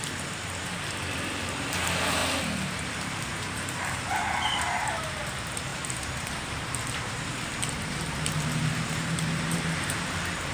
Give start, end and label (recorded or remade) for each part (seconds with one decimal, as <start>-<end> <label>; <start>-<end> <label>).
0.0-2.2 remade; 2.2-2.9 recorded; 2.9-10.5 remade